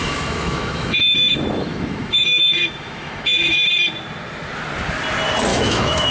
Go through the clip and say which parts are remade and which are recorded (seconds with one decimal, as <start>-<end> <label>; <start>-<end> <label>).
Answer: 0.0-3.7 remade; 3.7-5.5 recorded; 5.5-6.1 remade